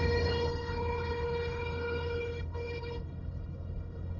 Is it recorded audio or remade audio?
remade